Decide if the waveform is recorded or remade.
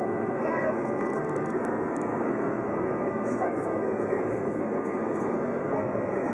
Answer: remade